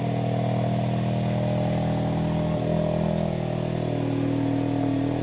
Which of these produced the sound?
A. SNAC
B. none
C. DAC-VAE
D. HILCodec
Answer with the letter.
B